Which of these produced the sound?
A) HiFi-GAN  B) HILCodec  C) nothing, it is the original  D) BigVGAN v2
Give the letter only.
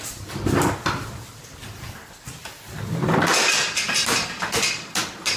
C